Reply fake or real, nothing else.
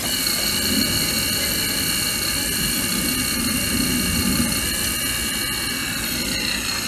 real